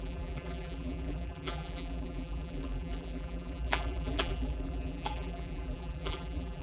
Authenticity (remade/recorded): remade